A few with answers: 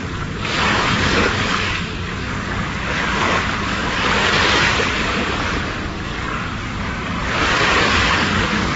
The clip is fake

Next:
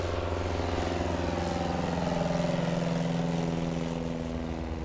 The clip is real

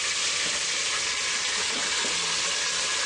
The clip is real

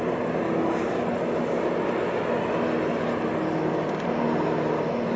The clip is real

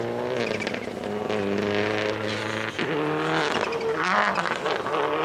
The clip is real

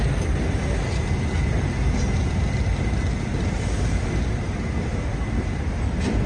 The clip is real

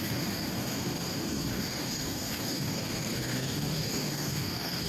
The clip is fake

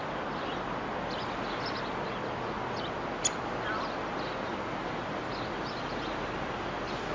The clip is real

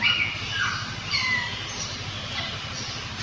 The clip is real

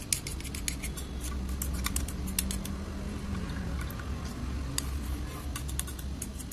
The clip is real